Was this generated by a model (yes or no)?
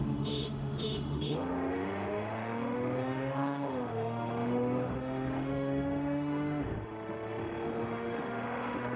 yes